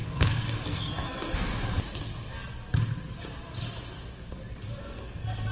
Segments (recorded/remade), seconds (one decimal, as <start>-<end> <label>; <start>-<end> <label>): 0.0-1.5 remade; 1.5-4.8 recorded; 4.8-5.5 remade